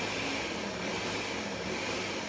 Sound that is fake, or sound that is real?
real